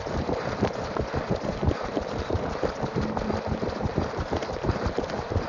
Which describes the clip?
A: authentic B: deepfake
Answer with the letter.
A